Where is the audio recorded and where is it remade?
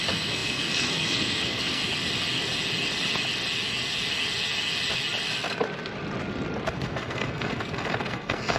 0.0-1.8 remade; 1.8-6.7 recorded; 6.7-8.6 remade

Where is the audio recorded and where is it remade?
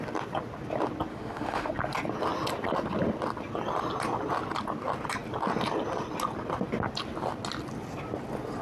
0.0-1.1 recorded; 1.1-1.7 remade; 1.7-8.6 recorded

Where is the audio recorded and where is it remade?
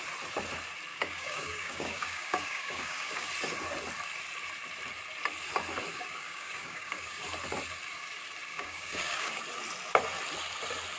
0.0-0.9 recorded; 0.9-3.3 remade; 3.3-5.9 recorded; 5.9-7.2 remade; 7.2-8.5 recorded; 8.5-9.4 remade; 9.4-11.0 recorded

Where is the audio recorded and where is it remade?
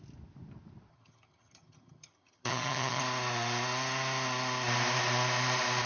0.0-0.9 recorded; 0.9-3.0 remade; 3.0-5.9 recorded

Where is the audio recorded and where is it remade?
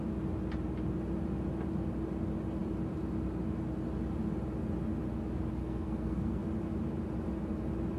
0.0-5.6 recorded; 5.6-6.4 remade; 6.4-8.0 recorded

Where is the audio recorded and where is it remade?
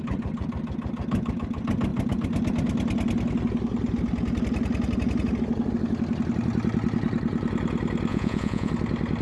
0.0-8.1 recorded; 8.1-8.7 remade; 8.7-9.2 recorded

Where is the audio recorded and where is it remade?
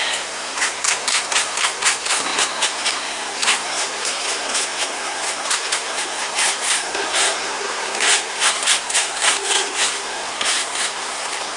0.0-11.6 remade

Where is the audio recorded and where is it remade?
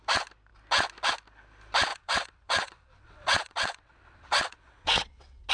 0.0-1.9 recorded; 1.9-5.5 remade